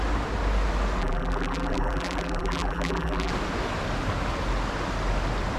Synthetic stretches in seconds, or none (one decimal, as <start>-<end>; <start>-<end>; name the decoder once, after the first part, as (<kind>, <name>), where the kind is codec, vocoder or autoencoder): 1.0-3.3 (vocoder, BigVGAN v2)